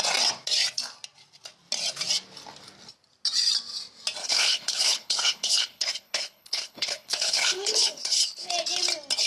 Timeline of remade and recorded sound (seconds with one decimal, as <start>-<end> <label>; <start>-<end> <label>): 0.0-4.2 recorded; 4.2-8.5 remade; 8.5-9.3 recorded